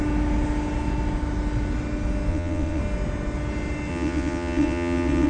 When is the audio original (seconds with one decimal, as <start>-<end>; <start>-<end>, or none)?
0.0-2.3; 2.8-3.9